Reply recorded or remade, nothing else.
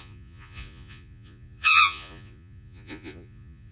remade